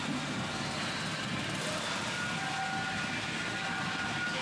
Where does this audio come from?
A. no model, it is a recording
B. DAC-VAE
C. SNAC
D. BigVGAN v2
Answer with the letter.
A